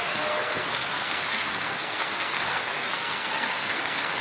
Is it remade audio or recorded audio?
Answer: remade